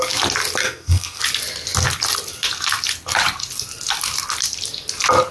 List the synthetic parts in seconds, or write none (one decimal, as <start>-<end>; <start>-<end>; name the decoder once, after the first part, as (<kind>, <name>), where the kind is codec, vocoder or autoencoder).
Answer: 0.6-1.2 (codec, SNAC)